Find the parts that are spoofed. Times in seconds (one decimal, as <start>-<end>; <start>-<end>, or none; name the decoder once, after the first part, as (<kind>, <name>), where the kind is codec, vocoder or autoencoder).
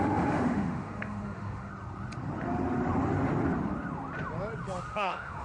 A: 0.0-1.7 (autoencoder, DAC-VAE); 4.9-5.4